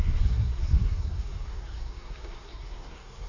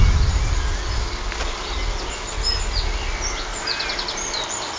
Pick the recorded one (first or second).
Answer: second